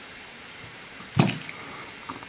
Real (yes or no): yes